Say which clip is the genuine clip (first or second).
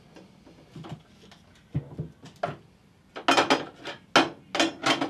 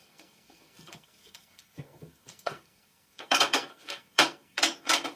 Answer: first